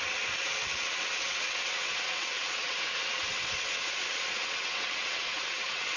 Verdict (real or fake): fake